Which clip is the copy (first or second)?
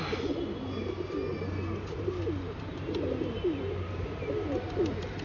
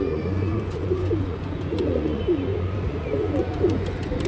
second